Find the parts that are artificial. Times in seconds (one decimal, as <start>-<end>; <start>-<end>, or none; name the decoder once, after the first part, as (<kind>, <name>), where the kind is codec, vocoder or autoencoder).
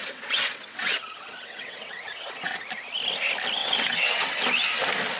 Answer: 0.0-2.6 (vocoder, WaveNeXt); 3.6-4.4